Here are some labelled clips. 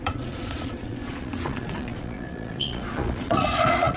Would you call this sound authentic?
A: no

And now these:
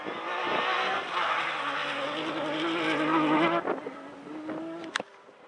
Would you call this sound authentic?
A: yes